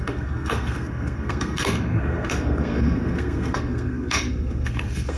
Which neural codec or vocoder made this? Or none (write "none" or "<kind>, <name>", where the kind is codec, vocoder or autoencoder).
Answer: codec, SNAC